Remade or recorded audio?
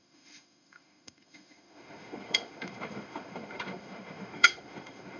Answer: remade